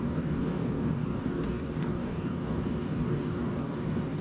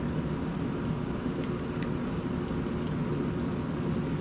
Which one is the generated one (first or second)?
first